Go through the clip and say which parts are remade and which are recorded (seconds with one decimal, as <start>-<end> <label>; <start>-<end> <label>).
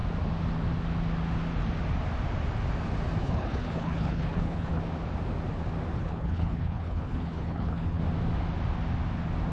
0.0-3.2 recorded; 3.2-4.8 remade; 4.8-6.0 recorded; 6.0-8.0 remade; 8.0-9.5 recorded